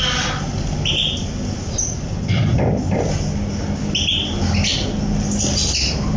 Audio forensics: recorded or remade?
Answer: recorded